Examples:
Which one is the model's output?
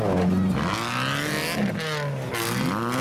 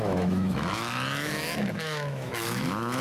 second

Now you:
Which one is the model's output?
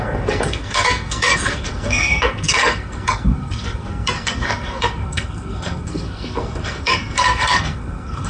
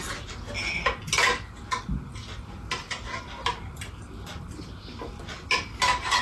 first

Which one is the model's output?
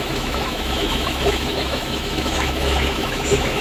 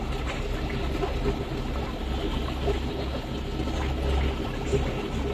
first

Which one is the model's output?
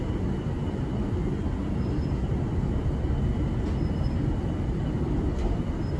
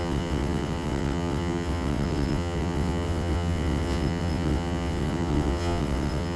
second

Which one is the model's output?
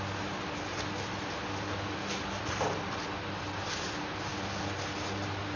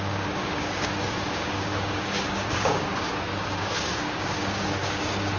second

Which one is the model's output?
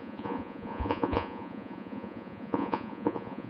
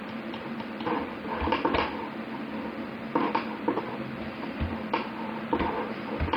first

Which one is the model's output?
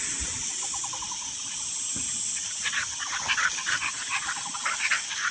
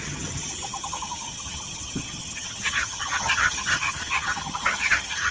second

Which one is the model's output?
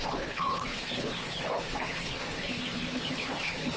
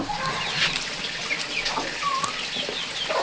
first